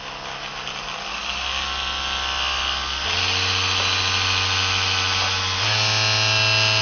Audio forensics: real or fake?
real